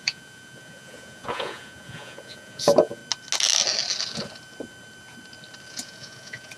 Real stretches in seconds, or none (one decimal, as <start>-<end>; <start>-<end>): 3.0-5.7